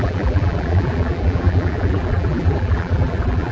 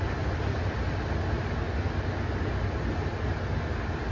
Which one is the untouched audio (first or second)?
second